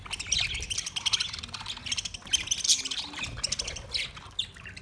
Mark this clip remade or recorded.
recorded